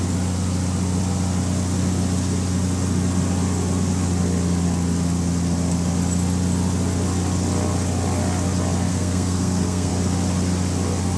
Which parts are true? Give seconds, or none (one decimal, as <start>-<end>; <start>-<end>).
0.0-8.9; 9.9-11.2